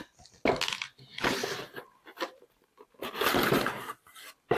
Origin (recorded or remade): recorded